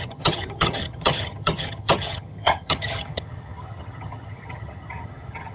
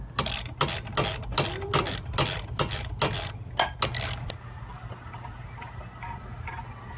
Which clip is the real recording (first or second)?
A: second